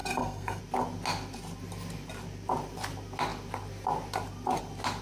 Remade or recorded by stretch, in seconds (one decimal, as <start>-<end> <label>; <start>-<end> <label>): 0.0-0.6 remade; 0.6-5.0 recorded